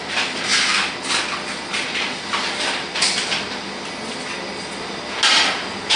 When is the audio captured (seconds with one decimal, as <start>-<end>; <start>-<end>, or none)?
0.0-6.0